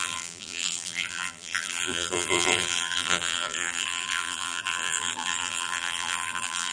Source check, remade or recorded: remade